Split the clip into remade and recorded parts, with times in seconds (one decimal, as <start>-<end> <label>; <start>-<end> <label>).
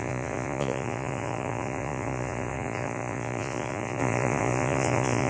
0.0-5.3 remade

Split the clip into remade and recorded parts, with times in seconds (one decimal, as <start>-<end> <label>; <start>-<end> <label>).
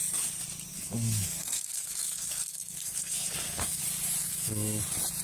0.0-0.7 recorded; 0.7-3.8 remade; 3.8-4.2 recorded; 4.2-4.8 remade; 4.8-5.2 recorded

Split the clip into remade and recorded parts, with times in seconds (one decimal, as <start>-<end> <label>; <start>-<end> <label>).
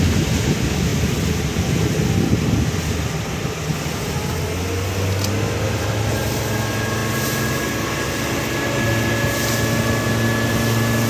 0.0-0.9 recorded; 0.9-2.3 remade; 2.3-3.7 recorded; 3.7-4.2 remade; 4.2-11.1 recorded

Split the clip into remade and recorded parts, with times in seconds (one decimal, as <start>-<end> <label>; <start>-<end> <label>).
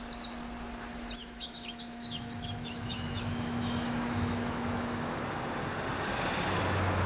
0.0-1.2 recorded; 1.2-5.2 remade; 5.2-7.1 recorded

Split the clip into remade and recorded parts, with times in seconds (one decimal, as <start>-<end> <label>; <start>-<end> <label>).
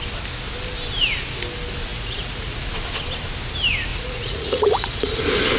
0.0-1.9 recorded; 1.9-2.7 remade; 2.7-3.9 recorded; 3.9-5.0 remade; 5.0-5.6 recorded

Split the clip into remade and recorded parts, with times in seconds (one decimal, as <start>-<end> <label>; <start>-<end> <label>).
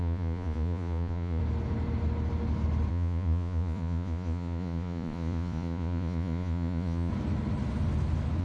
0.0-1.4 remade; 1.4-2.9 recorded; 2.9-7.1 remade; 7.1-8.4 recorded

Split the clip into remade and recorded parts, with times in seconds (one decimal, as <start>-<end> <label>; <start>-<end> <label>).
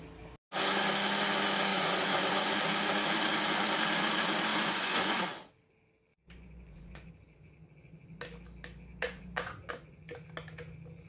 0.0-1.7 recorded; 1.7-2.5 remade; 2.5-4.5 recorded; 4.5-5.2 remade; 5.2-6.1 recorded; 6.1-7.1 remade; 7.1-8.9 recorded; 8.9-9.7 remade; 9.7-11.1 recorded